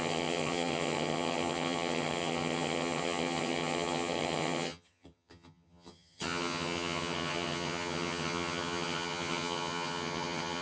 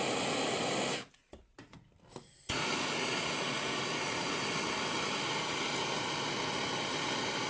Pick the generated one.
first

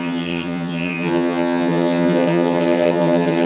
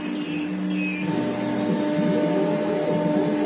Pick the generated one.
first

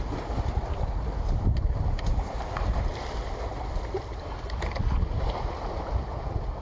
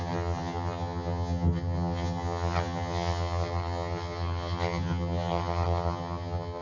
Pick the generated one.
second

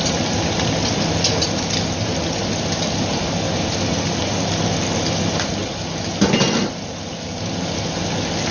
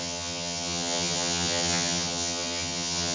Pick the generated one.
second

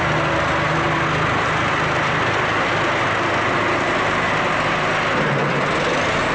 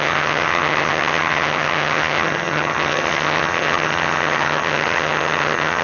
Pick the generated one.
second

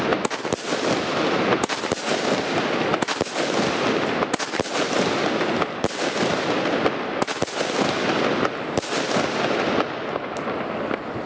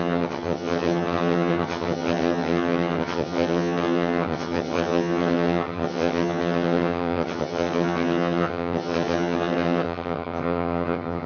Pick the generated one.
second